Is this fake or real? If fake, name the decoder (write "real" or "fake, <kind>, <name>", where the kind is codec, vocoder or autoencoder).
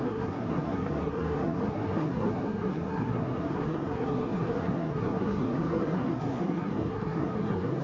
fake, codec, SNAC